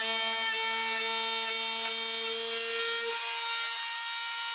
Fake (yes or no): no